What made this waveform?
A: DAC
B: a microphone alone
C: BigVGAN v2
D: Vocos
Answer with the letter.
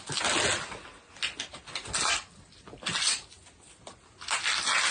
B